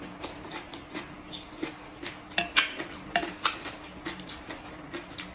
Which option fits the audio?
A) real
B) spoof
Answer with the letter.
A